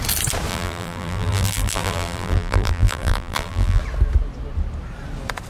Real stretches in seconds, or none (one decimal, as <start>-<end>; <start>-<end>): 0.0-0.5; 3.8-5.5